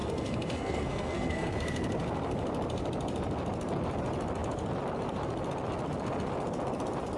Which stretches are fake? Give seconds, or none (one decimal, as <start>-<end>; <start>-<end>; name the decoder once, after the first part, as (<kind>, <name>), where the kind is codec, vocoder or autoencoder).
0.0-1.5 (codec, SNAC)